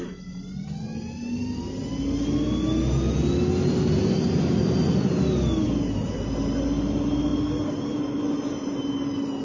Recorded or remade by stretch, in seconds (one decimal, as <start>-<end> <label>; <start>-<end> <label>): 0.0-9.4 recorded